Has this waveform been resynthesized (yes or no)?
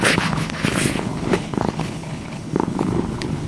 yes